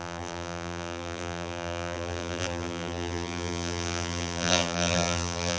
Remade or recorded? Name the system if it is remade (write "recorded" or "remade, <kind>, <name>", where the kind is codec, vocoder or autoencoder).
remade, vocoder, BigVGAN v2